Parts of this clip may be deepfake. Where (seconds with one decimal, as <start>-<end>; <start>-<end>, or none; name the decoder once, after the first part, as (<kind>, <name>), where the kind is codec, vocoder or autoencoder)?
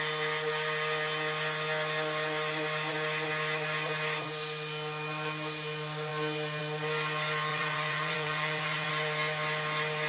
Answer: 7.5-8.9 (vocoder, Vocos)